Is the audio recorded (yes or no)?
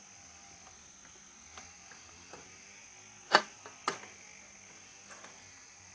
yes